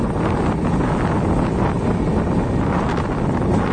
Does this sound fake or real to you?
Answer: real